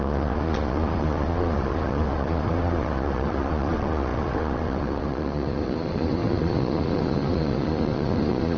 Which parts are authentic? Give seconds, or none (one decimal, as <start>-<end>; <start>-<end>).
none